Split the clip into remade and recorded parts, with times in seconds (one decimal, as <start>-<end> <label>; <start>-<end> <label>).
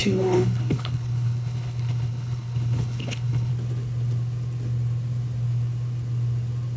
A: 0.0-3.5 remade; 3.5-6.8 recorded